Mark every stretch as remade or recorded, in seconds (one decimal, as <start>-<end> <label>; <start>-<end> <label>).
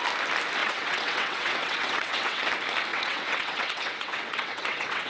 0.0-0.6 recorded; 0.6-2.5 remade; 2.5-2.9 recorded; 2.9-5.1 remade